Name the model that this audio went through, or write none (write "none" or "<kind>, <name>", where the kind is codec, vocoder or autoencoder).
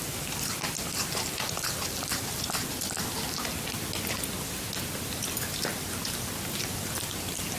none